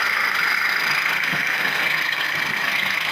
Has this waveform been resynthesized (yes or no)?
yes